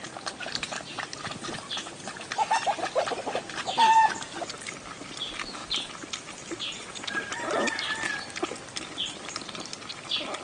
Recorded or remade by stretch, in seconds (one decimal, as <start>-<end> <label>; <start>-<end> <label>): 0.0-5.6 recorded; 5.6-6.6 remade; 6.6-10.4 recorded